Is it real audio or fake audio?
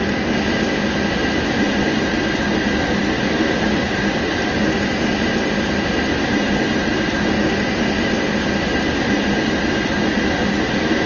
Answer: real